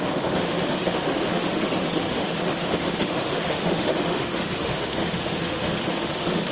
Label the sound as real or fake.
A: fake